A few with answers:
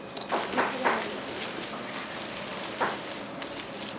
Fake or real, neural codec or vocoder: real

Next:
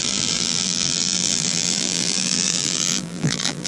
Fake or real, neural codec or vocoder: fake, vocoder, BigVGAN v2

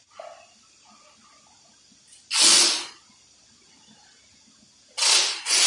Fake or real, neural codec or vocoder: real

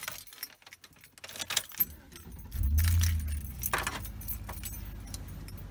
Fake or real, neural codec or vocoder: real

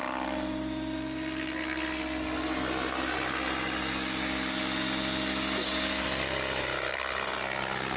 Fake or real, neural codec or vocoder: real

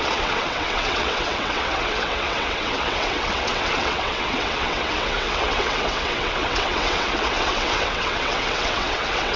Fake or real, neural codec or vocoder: fake, vocoder, WaveNeXt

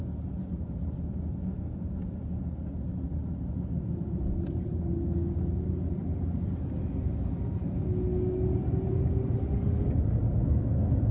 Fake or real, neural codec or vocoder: real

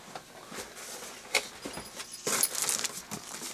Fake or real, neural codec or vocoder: real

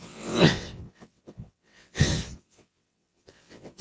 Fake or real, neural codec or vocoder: fake, vocoder, WaveNeXt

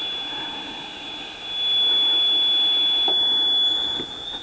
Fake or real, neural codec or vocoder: real